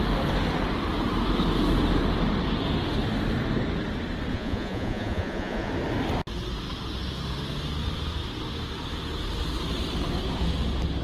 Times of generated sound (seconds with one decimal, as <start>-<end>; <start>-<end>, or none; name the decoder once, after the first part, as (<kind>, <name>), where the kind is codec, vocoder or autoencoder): 4.3-5.7 (vocoder, Vocos)